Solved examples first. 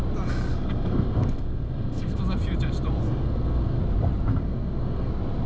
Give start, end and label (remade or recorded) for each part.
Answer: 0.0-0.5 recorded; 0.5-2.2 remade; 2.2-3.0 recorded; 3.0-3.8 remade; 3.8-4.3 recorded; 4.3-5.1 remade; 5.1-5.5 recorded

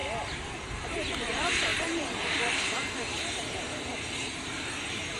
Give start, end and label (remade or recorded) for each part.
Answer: 0.0-0.6 recorded; 0.6-5.2 remade